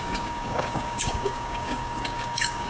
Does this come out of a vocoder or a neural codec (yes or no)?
yes